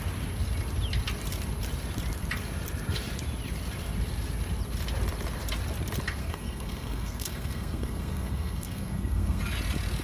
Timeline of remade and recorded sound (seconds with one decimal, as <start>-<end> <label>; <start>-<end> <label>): 0.0-6.2 recorded; 6.2-9.4 remade; 9.4-10.0 recorded